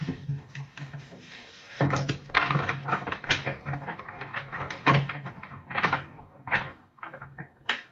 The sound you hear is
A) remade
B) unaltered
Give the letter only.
A